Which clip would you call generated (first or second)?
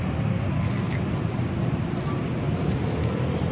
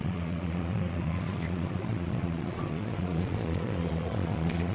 second